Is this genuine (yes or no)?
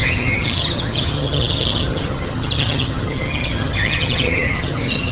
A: no